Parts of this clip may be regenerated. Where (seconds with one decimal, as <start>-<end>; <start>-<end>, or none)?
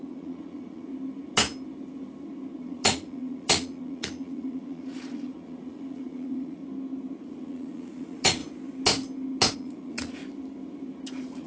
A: 0.0-0.9; 2.6-6.6; 7.2-8.4; 9.5-10.2; 11.1-11.5